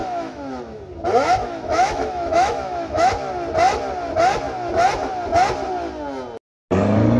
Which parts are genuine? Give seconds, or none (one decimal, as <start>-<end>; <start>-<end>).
0.8-1.4; 3.1-7.2